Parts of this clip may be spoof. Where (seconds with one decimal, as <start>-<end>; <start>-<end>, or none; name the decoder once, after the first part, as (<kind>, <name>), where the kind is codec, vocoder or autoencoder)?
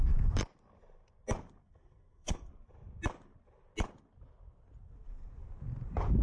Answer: 1.6-2.5 (codec, SNAC)